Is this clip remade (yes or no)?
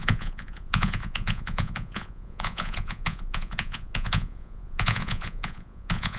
yes